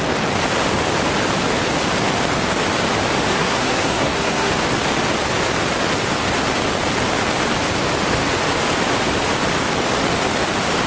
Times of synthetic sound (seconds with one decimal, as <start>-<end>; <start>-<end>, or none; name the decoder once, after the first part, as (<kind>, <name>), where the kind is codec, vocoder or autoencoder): 3.3-4.5 (codec, SNAC)